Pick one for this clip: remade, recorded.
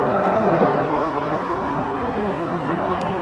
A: remade